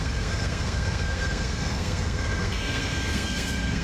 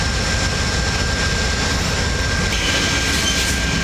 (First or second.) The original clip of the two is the second